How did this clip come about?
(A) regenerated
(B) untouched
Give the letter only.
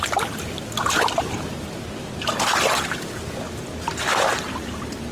B